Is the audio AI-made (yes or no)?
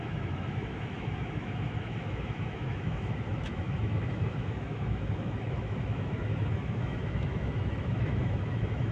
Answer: yes